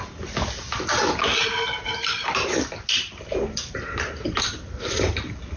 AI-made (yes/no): no